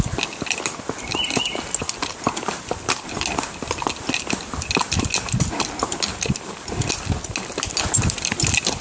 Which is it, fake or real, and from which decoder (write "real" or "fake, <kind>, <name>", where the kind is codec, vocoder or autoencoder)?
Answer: real